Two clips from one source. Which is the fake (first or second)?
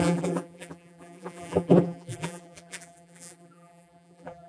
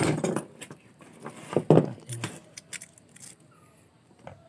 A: first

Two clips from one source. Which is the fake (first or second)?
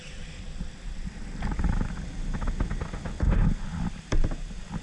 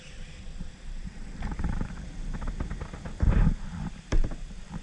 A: second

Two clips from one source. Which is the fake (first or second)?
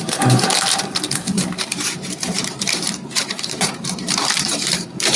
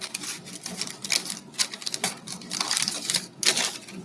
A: first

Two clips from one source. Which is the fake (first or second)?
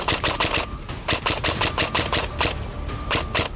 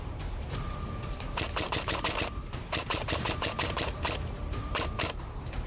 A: second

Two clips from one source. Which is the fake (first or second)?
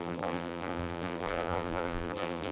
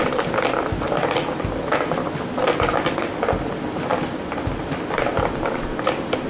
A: first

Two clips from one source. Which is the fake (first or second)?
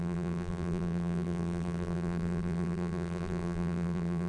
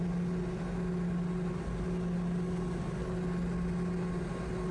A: first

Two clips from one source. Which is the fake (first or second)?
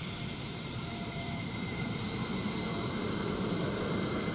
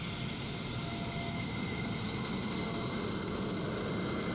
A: first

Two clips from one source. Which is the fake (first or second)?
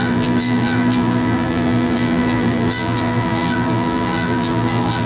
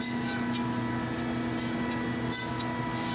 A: first